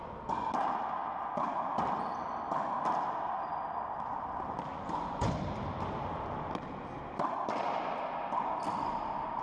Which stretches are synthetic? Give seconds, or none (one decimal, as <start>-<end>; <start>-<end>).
4.7-5.4